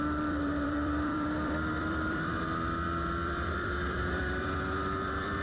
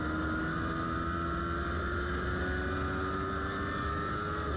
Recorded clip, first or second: second